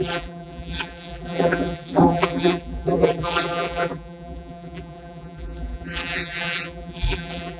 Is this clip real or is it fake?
fake